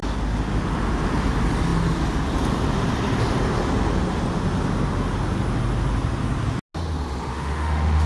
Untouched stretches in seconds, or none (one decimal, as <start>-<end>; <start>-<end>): 0.0-7.3